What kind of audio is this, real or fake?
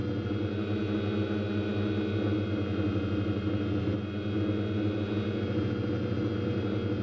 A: real